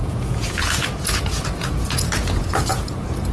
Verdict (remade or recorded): remade